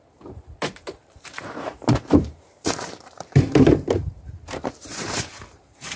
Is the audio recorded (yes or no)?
no